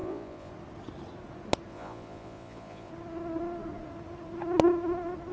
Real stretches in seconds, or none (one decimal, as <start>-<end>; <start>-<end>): 0.5-1.7; 2.9-5.3